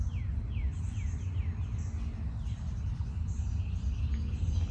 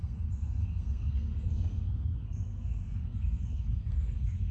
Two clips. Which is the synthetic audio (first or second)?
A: second